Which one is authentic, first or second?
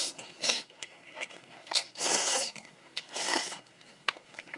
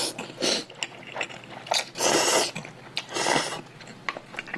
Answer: second